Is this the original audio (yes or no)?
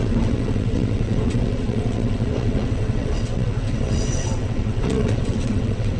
no